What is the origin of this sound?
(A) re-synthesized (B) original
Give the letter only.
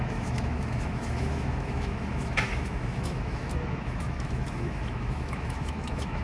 A